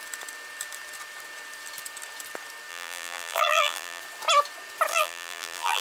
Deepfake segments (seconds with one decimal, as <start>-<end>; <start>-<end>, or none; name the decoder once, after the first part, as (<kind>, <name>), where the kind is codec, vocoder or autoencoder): 2.7-4.0 (vocoder, BigVGAN v2); 4.9-5.8